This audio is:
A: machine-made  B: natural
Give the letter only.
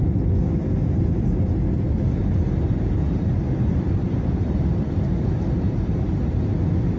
B